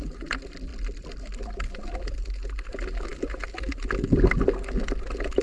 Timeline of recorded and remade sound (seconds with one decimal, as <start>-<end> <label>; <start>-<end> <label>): 0.0-5.4 recorded